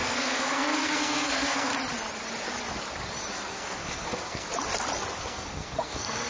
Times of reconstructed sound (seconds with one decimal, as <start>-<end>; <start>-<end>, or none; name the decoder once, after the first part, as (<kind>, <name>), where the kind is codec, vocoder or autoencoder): 0.0-1.7 (codec, SNAC); 3.3-4.5; 5.2-6.3